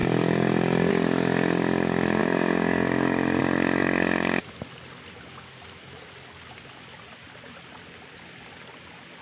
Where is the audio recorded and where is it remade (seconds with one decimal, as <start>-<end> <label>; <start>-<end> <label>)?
0.0-0.9 remade; 0.9-2.2 recorded; 2.2-3.4 remade; 3.4-9.2 recorded